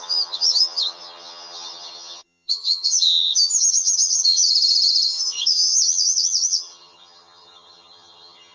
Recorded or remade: remade